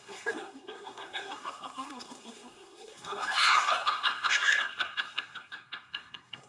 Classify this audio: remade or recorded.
remade